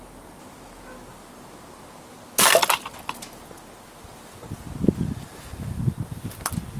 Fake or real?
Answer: real